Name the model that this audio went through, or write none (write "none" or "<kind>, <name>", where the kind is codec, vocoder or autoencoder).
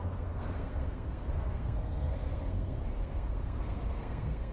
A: codec, SNAC